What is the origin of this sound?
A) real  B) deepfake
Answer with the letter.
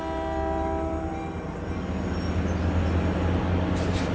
A